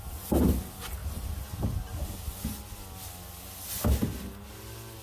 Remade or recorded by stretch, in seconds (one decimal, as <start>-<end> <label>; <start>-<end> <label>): 0.0-5.0 recorded